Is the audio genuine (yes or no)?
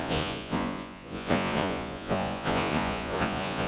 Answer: no